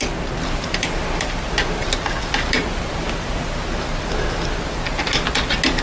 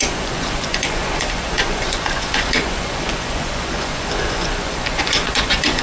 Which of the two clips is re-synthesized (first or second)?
second